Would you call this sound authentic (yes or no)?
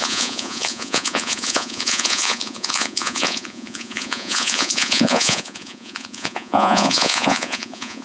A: no